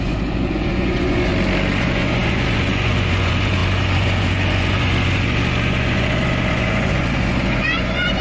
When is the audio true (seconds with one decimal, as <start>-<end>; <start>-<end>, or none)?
1.3-1.8